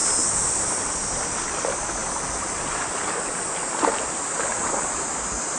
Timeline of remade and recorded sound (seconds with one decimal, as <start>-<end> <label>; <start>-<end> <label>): 0.0-2.0 recorded; 2.0-4.9 remade; 4.9-5.6 recorded